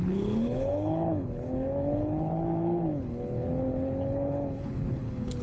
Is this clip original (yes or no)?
no